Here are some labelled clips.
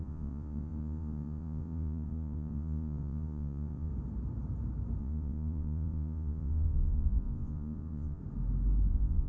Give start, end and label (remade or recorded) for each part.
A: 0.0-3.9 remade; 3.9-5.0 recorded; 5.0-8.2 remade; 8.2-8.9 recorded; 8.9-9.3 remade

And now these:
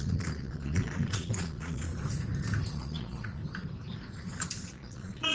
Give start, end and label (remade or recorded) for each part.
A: 0.0-1.9 remade; 1.9-2.7 recorded; 2.7-3.4 remade; 3.4-4.7 recorded; 4.7-5.3 remade